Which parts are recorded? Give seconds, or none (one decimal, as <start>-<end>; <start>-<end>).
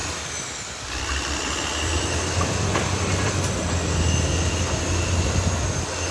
3.7-6.1